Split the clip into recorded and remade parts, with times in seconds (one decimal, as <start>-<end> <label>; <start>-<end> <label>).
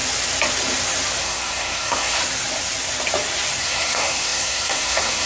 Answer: 0.0-1.2 recorded; 1.2-2.2 remade; 2.2-3.6 recorded; 3.6-5.3 remade